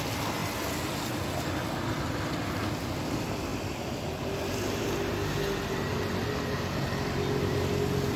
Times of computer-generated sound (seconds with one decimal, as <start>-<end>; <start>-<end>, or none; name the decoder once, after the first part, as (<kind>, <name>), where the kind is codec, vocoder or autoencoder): none